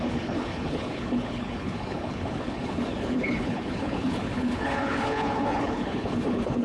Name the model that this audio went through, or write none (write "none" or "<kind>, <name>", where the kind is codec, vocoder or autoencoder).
codec, HILCodec